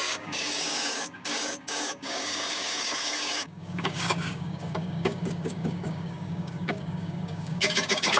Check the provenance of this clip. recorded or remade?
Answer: remade